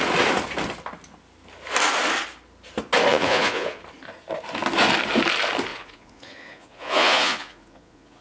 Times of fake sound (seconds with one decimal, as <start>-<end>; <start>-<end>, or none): 3.1-3.8; 5.7-8.2